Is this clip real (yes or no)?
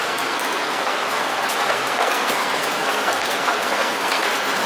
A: no